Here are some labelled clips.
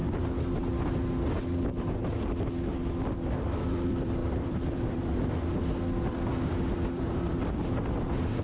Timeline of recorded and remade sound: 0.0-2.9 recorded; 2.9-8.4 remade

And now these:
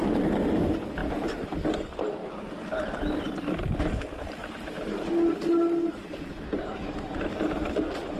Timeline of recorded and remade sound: 0.0-1.0 recorded; 1.0-1.5 remade; 1.5-4.4 recorded; 4.4-5.1 remade; 5.1-6.0 recorded; 6.0-8.2 remade

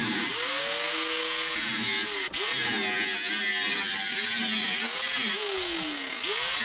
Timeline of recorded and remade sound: 0.0-0.6 remade; 0.6-6.6 recorded

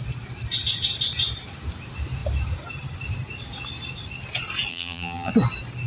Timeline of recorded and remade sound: 0.0-4.7 recorded; 4.7-5.3 remade; 5.3-5.9 recorded

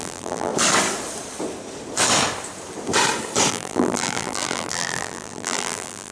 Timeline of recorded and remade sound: 0.0-0.5 remade; 0.5-3.5 recorded; 3.5-6.1 remade